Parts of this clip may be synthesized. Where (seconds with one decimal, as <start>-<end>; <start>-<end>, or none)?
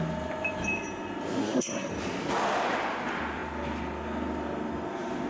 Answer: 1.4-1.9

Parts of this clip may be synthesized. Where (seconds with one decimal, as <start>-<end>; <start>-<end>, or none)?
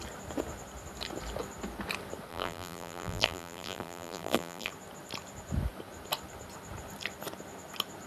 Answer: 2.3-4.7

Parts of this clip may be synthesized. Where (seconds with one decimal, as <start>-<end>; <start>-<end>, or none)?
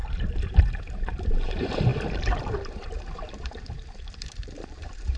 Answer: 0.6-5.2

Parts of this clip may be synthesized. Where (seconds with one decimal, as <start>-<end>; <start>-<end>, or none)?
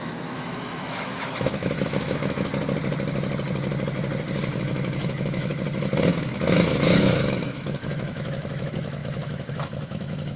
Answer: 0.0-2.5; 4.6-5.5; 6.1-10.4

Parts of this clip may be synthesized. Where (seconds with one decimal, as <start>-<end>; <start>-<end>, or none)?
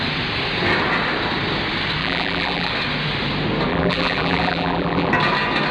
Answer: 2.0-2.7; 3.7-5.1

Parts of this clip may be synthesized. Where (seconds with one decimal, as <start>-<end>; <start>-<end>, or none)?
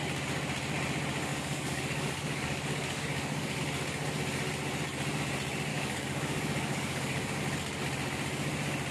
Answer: 1.3-3.6; 5.7-7.4